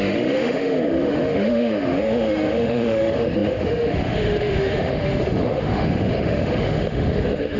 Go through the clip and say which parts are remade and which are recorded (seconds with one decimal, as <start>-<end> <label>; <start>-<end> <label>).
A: 0.0-7.6 remade